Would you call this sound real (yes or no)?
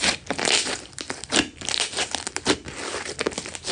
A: yes